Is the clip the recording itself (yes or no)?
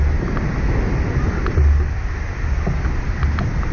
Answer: yes